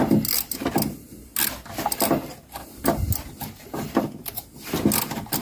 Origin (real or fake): real